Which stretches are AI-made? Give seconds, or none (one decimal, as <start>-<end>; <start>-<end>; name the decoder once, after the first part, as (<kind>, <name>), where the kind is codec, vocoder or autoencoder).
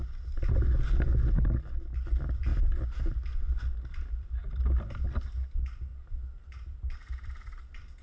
none